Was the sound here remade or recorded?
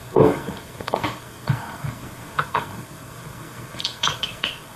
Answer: remade